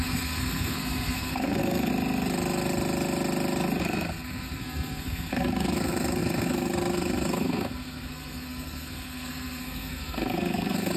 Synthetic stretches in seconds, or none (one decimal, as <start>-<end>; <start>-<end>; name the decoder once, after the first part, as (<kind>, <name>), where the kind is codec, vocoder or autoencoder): 0.0-1.9 (codec, SNAC); 3.8-11.0